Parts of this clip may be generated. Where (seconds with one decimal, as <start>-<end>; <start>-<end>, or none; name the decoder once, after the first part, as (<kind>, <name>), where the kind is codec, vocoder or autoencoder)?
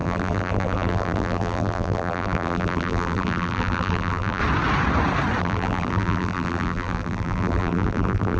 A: 0.0-4.4 (vocoder, BigVGAN v2); 5.4-8.4